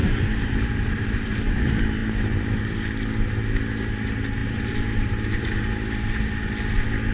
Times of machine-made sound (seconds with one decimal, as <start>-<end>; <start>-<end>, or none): 0.0-1.6; 4.4-5.6